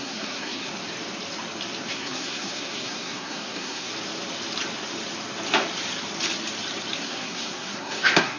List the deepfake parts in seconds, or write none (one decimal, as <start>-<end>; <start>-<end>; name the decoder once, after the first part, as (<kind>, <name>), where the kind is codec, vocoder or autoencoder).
0.0-0.7 (codec, SNAC); 1.9-3.9; 7.0-8.4